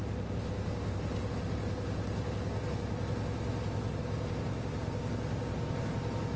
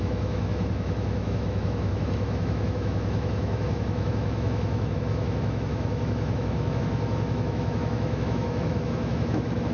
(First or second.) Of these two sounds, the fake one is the second